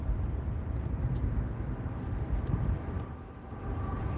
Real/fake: fake